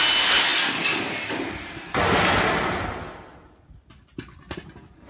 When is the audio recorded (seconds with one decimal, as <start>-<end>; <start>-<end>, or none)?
0.0-5.1